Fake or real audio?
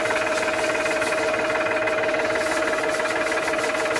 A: real